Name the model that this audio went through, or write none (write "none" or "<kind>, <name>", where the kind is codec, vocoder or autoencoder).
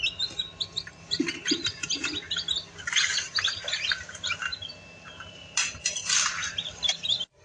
vocoder, BigVGAN v2